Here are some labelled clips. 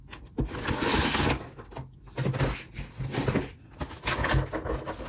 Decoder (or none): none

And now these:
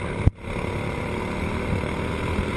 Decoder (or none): none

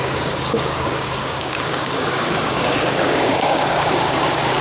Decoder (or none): codec, DAC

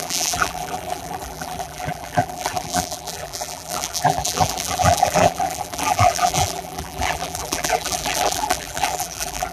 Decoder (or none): vocoder, BigVGAN v2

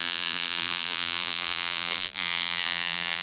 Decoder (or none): vocoder, BigVGAN v2